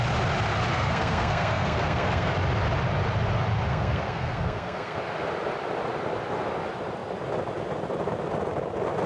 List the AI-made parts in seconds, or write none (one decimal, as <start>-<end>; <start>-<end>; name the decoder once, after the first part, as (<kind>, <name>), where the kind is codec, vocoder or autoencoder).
0.7-2.3 (codec, SNAC); 3.7-5.0